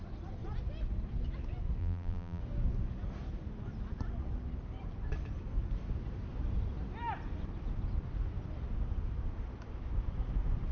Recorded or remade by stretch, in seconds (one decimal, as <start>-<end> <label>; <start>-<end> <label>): 0.0-1.8 recorded; 1.8-2.4 remade; 2.4-10.7 recorded